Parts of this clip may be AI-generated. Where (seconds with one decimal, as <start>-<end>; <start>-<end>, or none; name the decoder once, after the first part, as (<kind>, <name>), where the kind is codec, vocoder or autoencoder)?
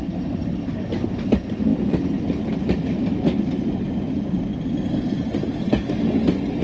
4.5-5.3 (vocoder, BigVGAN v2)